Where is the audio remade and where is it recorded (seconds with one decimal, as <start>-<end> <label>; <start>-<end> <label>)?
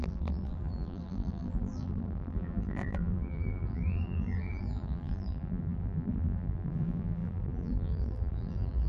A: 0.0-8.9 remade